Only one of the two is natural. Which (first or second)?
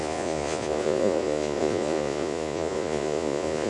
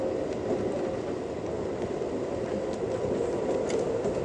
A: second